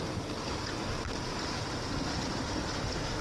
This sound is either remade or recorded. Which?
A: recorded